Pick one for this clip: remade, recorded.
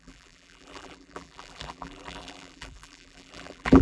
remade